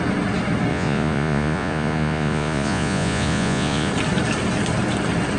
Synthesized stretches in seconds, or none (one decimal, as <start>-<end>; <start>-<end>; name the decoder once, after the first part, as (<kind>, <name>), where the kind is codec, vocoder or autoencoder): 0.7-3.9 (vocoder, Vocos)